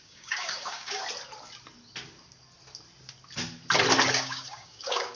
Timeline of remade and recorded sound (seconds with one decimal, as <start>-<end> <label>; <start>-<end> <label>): 0.0-1.0 remade; 1.0-4.1 recorded; 4.1-5.2 remade